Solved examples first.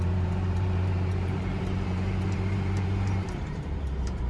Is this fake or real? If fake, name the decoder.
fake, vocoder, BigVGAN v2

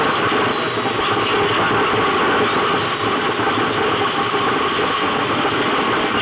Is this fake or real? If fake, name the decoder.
real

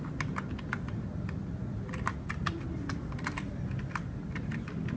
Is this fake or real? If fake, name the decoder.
real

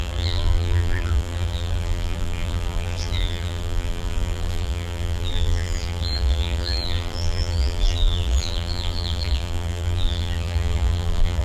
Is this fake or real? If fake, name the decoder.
fake, vocoder, BigVGAN v2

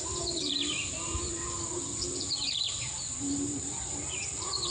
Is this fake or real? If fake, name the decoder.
fake, vocoder, BigVGAN v2